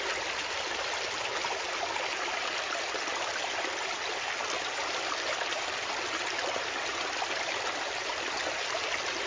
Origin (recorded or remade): recorded